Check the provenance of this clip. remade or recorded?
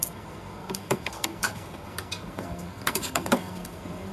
remade